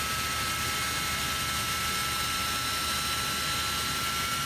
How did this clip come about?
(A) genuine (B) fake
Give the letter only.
A